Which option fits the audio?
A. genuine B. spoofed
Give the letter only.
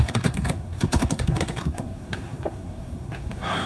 B